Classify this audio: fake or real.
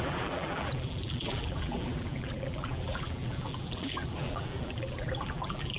fake